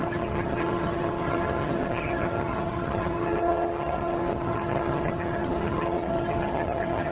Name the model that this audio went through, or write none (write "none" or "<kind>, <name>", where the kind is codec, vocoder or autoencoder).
vocoder, HiFi-GAN